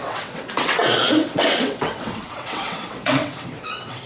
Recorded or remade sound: remade